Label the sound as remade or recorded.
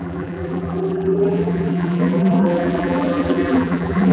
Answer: remade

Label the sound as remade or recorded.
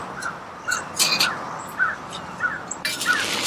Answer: recorded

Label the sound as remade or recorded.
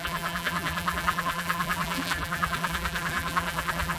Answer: remade